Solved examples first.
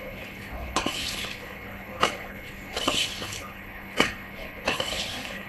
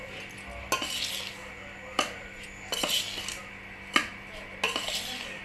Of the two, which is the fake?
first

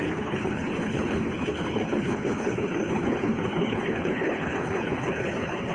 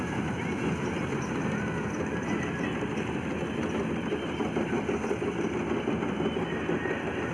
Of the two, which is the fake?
first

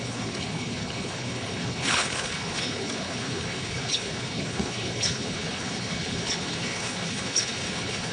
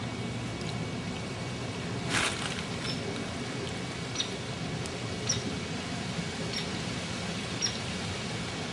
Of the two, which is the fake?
first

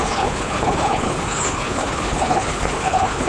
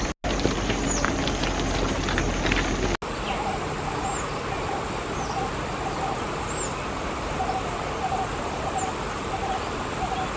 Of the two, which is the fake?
first